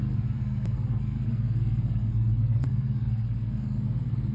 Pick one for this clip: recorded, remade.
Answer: remade